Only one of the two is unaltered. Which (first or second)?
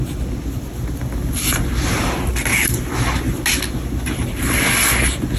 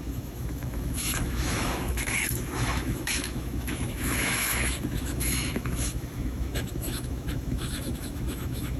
first